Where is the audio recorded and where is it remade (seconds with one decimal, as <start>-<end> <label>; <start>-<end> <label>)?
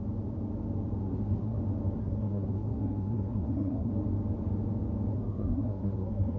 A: 0.0-1.0 recorded; 1.0-1.6 remade; 1.6-2.0 recorded; 2.0-3.9 remade; 3.9-5.1 recorded; 5.1-6.4 remade